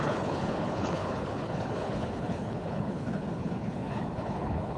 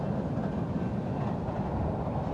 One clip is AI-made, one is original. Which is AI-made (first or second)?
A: first